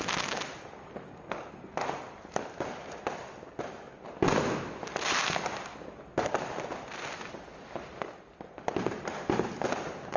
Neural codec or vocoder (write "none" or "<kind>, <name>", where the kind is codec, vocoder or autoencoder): none